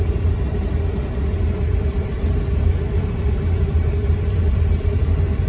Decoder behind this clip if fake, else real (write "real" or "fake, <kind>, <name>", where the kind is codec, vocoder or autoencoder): fake, vocoder, BigVGAN v2